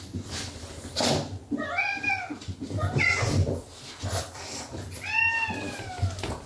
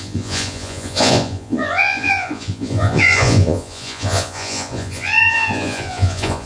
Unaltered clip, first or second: first